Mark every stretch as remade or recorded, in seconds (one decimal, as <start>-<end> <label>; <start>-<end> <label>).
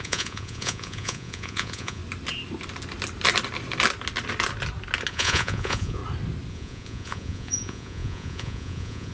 0.0-2.0 remade; 2.0-5.1 recorded; 5.1-6.0 remade; 6.0-6.5 recorded; 6.5-9.1 remade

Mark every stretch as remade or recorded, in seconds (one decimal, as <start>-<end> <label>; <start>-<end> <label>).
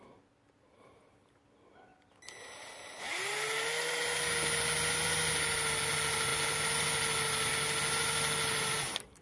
0.0-9.2 recorded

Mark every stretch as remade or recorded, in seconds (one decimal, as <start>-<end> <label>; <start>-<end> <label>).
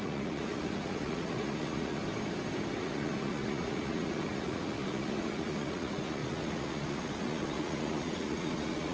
0.0-2.0 remade; 2.0-2.8 recorded; 2.8-8.9 remade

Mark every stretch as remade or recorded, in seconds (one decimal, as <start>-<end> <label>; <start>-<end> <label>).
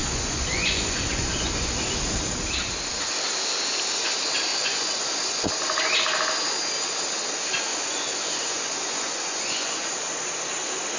0.0-1.7 remade; 1.7-4.5 recorded; 4.5-5.5 remade; 5.5-7.7 recorded; 7.7-9.9 remade; 9.9-11.0 recorded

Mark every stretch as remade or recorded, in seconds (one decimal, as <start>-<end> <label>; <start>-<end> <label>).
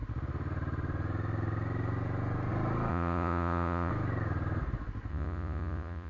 0.0-2.9 recorded; 2.9-3.9 remade; 3.9-5.1 recorded; 5.1-6.1 remade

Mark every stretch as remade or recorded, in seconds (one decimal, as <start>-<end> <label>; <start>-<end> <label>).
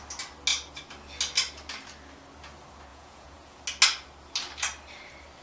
0.0-2.9 recorded; 2.9-3.6 remade; 3.6-5.4 recorded